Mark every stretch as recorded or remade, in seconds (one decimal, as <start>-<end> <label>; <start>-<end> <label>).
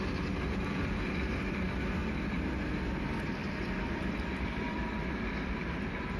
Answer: 0.0-2.0 recorded; 2.0-2.6 remade; 2.6-3.4 recorded; 3.4-4.8 remade; 4.8-6.2 recorded